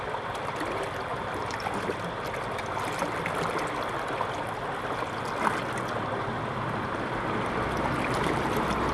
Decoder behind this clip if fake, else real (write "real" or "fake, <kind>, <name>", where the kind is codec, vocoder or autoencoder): real